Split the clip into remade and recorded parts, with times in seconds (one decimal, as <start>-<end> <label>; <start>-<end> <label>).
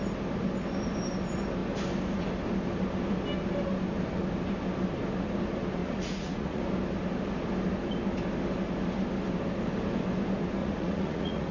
0.0-5.8 recorded; 5.8-6.6 remade; 6.6-10.6 recorded; 10.6-11.5 remade